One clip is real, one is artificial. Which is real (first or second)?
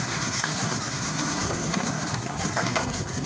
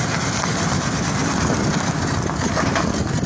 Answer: second